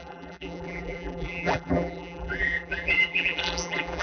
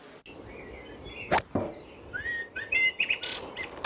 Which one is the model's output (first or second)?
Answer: first